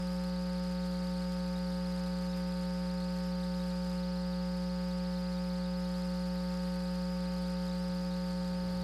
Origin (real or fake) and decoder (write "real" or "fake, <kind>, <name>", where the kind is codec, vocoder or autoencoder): real